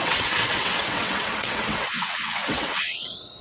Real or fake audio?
fake